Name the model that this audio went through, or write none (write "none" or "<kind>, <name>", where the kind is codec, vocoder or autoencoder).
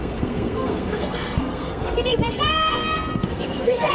codec, SNAC